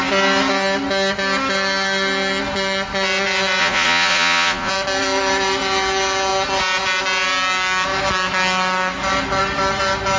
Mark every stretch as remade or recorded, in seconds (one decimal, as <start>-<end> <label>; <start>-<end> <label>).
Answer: 0.0-3.6 recorded; 3.6-4.7 remade; 4.7-10.2 recorded